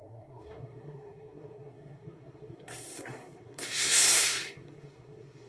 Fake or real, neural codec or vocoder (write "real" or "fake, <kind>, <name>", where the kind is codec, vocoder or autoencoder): fake, codec, SNAC